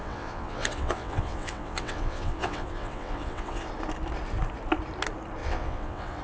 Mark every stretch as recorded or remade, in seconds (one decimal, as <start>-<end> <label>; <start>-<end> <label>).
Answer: 0.0-3.7 remade; 3.7-5.4 recorded; 5.4-6.2 remade

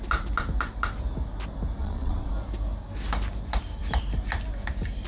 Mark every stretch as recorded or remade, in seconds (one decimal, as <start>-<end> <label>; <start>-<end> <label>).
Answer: 0.0-1.8 recorded; 1.8-2.3 remade; 2.3-5.1 recorded